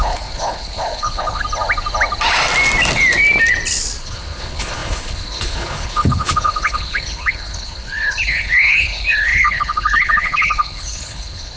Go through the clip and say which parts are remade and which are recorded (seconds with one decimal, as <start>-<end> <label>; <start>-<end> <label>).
0.0-1.4 remade; 1.4-4.0 recorded; 4.0-11.6 remade

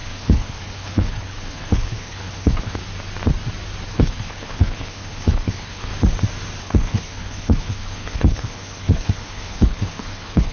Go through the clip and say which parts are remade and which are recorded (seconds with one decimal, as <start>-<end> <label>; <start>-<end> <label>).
0.0-2.8 remade; 2.8-3.9 recorded; 3.9-5.9 remade; 5.9-6.6 recorded; 6.6-10.5 remade

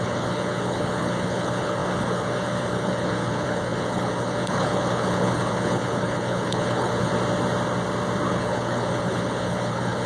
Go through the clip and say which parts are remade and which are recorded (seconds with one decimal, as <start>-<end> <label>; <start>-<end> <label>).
0.0-7.1 remade; 7.1-8.3 recorded; 8.3-10.1 remade

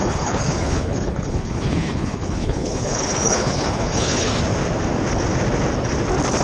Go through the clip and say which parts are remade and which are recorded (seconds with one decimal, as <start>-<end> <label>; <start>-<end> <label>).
0.0-4.3 remade; 4.3-6.4 recorded

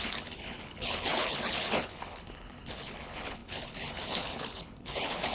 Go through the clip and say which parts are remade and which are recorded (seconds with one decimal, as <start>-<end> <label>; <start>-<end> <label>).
0.0-5.3 remade

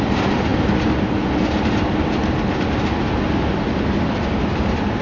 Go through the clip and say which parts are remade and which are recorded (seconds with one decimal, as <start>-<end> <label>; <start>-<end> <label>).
0.0-5.0 recorded